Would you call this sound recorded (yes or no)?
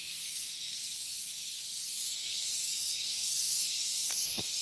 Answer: no